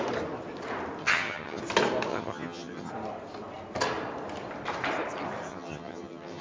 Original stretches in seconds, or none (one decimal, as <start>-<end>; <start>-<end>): 0.0-1.0; 1.6-2.1; 2.9-5.5